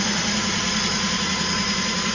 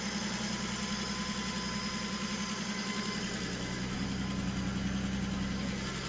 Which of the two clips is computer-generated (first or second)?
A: first